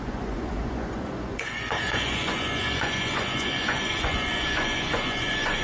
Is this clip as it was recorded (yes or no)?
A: no